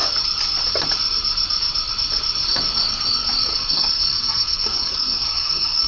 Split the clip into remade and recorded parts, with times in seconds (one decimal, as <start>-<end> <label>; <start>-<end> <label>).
0.0-3.5 recorded; 3.5-5.9 remade